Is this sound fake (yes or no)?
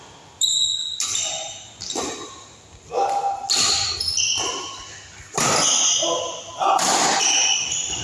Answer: no